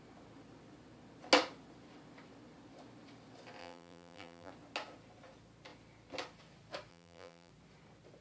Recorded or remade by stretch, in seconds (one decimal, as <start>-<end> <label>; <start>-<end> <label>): 0.0-3.6 recorded; 3.6-4.5 remade; 4.5-6.9 recorded; 6.9-7.5 remade; 7.5-8.2 recorded